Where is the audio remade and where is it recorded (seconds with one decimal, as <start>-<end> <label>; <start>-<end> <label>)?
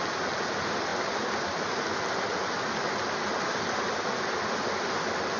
0.0-5.4 recorded